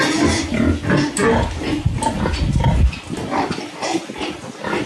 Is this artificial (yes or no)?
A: no